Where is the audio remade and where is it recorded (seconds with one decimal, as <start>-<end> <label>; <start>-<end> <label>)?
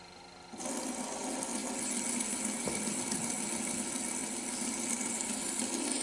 0.0-6.0 recorded